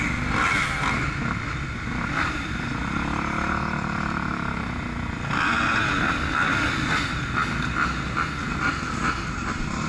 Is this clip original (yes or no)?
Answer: yes